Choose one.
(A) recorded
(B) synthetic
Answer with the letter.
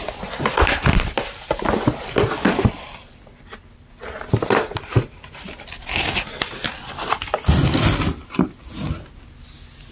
A